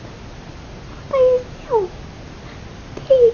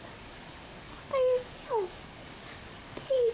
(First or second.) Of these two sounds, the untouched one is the first